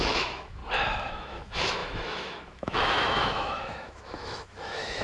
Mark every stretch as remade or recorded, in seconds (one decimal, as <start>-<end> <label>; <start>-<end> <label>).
0.0-0.6 remade; 0.6-1.1 recorded; 1.1-5.0 remade